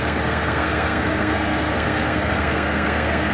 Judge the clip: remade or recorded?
remade